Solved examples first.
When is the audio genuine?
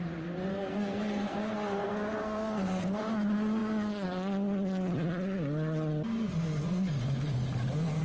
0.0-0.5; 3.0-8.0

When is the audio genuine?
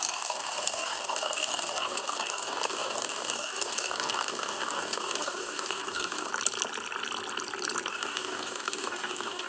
6.3-7.9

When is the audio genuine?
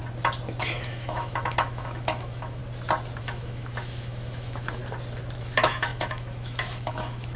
0.0-0.6; 2.6-3.2; 4.8-5.4